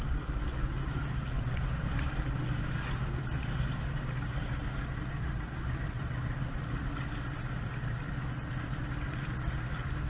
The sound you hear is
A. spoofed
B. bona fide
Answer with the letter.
B